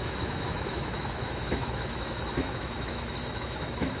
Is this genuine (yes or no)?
no